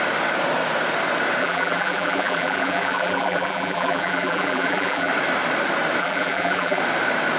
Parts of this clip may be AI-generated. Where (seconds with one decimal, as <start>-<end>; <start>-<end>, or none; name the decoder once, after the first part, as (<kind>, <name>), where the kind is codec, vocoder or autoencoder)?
1.4-5.1 (vocoder, BigVGAN v2); 6.0-6.8